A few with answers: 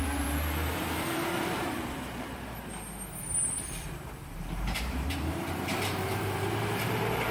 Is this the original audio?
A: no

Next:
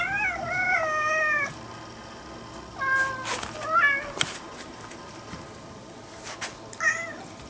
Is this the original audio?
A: yes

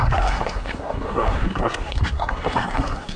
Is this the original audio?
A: no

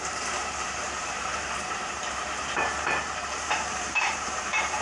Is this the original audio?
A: no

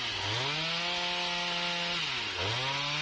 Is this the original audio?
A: yes